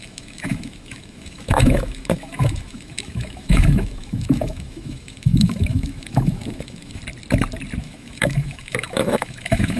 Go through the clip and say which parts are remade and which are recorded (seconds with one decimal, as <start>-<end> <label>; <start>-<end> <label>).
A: 0.0-7.0 remade; 7.0-7.8 recorded; 7.8-9.8 remade